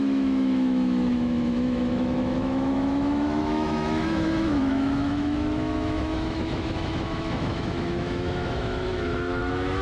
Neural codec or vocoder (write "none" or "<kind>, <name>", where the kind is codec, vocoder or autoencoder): autoencoder, DAC-VAE